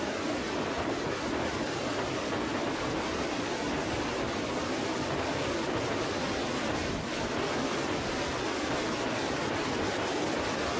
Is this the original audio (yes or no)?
yes